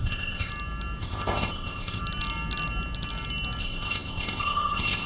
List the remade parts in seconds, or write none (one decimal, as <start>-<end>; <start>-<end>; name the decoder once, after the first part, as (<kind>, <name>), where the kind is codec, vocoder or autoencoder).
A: 0.0-0.5 (codec, ZipCodec); 1.0-2.0; 3.6-5.1